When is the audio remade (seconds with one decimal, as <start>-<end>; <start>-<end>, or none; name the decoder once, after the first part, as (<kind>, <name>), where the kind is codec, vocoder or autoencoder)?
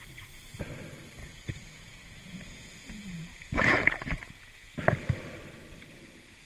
1.2-4.7 (vocoder, Vocos)